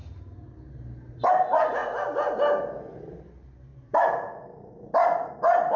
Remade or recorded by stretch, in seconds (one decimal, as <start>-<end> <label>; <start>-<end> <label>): 0.0-5.8 recorded